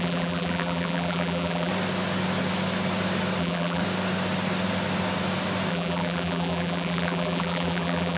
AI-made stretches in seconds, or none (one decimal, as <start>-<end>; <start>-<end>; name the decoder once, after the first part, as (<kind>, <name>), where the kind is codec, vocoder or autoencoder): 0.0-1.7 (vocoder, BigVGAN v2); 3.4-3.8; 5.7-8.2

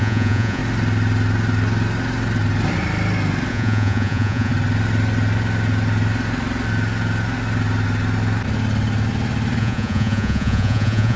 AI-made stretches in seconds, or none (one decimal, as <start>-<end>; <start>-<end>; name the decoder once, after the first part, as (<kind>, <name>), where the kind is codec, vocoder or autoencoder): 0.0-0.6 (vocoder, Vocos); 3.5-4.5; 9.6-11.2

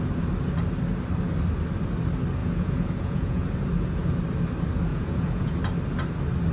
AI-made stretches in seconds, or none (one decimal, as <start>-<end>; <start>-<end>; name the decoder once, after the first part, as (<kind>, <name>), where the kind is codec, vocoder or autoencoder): 2.4-3.5 (vocoder, Vocos); 4.9-5.6

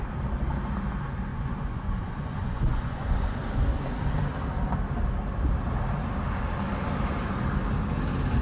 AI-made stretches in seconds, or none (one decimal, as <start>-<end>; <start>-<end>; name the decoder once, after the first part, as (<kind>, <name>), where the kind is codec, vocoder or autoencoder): 1.3-3.4 (vocoder, Vocos)

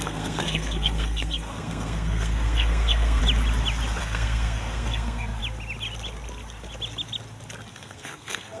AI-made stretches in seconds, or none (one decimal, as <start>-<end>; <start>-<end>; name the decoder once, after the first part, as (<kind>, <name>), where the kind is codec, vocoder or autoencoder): 0.0-3.2 (codec, SNAC); 4.0-5.4; 7.7-8.6